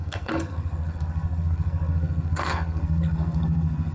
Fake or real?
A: fake